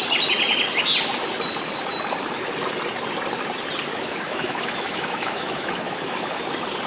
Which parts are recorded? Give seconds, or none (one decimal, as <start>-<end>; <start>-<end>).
0.0-3.9; 6.4-6.9